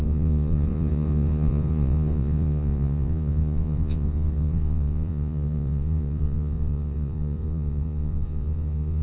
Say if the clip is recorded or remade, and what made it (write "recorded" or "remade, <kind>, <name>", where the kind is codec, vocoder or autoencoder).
remade, vocoder, Vocos